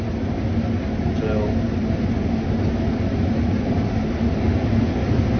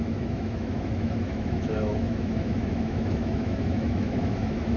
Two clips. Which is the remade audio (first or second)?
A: second